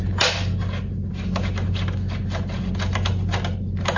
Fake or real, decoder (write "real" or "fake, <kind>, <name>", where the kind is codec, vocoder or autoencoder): real